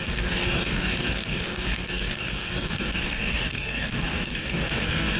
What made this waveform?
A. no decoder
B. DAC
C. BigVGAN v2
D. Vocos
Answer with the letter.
B